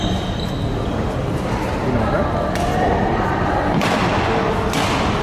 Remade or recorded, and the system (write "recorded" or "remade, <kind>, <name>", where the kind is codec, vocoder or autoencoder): recorded